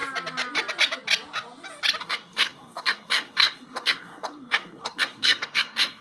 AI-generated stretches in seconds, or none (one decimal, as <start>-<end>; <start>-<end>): 2.0-6.0